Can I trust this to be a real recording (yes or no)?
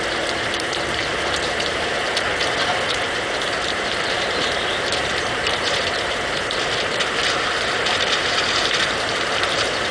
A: no